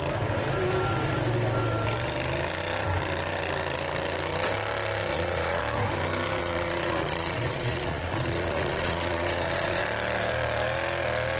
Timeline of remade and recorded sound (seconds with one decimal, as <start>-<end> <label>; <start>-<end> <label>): 0.0-5.1 recorded; 5.1-5.6 remade; 5.6-6.4 recorded; 6.4-9.8 remade; 9.8-11.4 recorded